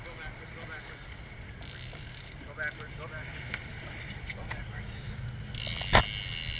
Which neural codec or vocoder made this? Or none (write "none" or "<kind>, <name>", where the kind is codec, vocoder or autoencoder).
none